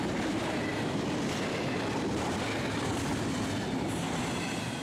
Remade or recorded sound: recorded